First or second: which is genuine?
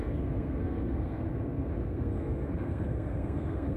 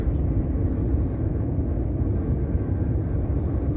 second